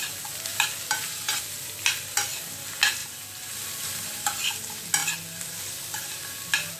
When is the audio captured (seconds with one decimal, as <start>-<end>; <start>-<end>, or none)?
0.0-0.5; 1.4-3.0; 4.4-6.8